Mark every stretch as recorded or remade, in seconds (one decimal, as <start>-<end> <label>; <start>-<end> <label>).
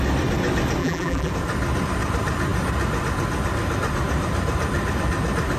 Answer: 0.0-0.8 recorded; 0.8-1.3 remade; 1.3-5.6 recorded